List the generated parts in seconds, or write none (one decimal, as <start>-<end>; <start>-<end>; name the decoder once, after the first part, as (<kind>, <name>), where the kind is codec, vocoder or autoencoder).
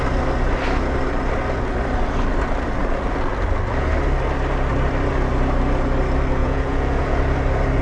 6.4-7.2 (vocoder, Vocos)